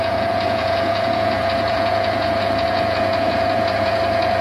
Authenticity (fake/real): fake